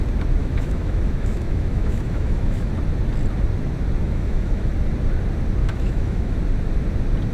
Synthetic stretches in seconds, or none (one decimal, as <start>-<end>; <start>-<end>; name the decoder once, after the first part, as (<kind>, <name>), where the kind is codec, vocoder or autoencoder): 0.4-2.7 (autoencoder, DAC-VAE); 4.0-4.7; 5.6-6.4